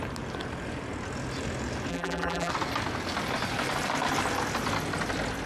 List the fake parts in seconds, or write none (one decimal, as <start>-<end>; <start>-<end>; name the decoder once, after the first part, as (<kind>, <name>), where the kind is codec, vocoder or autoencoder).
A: 1.9-2.5 (vocoder, BigVGAN v2)